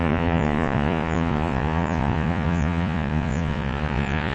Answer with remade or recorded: remade